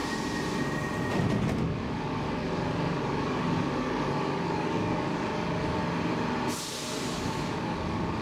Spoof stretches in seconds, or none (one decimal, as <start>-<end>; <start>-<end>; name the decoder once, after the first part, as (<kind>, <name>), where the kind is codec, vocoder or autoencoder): 1.6-5.8 (codec, DAC); 7.5-8.2